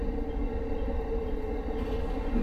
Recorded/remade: recorded